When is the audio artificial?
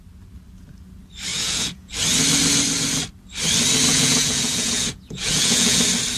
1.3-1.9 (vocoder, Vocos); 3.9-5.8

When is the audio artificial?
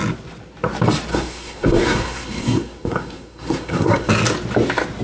1.1-4.1 (codec, SNAC)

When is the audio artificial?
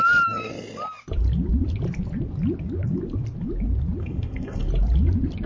4.0-4.7 (codec, SNAC)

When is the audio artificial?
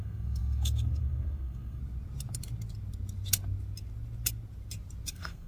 0.0-1.8 (codec, SNAC); 5.1-5.5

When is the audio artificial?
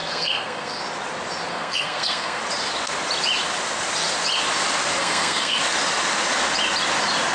0.0-0.8 (codec, SNAC); 1.5-2.4; 5.0-5.6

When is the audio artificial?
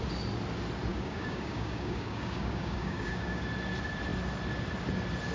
0.9-3.4 (codec, DAC)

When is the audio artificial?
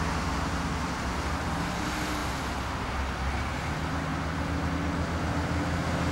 none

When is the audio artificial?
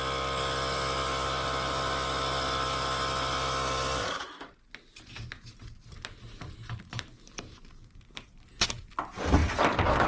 none